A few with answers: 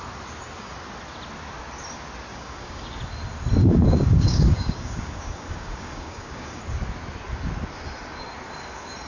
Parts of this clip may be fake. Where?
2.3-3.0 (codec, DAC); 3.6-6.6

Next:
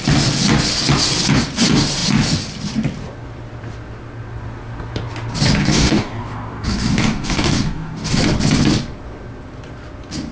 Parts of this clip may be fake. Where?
5.6-8.2 (codec, DAC)

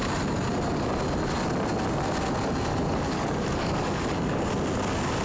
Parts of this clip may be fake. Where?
2.7-4.5 (codec, DAC)

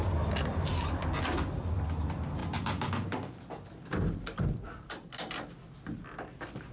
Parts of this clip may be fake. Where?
none

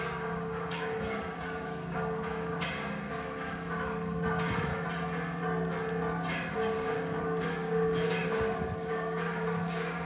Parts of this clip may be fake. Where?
0.0-4.7 (codec, DAC); 6.3-10.0

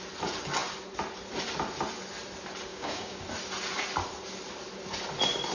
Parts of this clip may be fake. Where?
2.7-3.2 (codec, DAC)